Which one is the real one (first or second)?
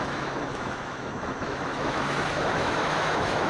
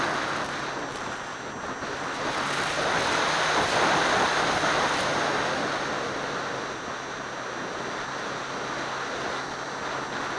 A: second